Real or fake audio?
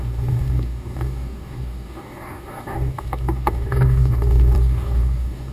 fake